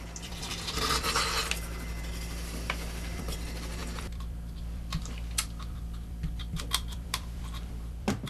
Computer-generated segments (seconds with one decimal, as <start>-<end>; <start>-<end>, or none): 0.0-8.3